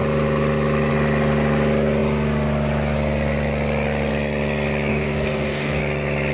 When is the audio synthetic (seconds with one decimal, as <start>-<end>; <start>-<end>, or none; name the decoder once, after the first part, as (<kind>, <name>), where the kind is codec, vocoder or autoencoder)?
4.9-5.8 (codec, DAC)